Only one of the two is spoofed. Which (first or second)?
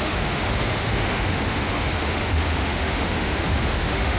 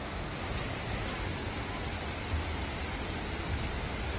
first